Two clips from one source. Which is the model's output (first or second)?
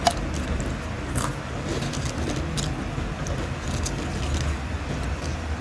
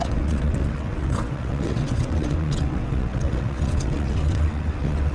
second